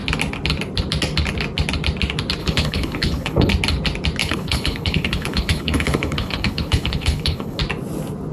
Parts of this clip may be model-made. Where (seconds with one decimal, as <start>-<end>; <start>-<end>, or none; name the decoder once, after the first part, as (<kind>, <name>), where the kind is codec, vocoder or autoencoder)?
2.4-3.5 (codec, HILCodec); 4.2-7.6